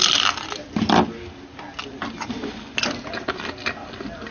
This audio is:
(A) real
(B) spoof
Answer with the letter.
A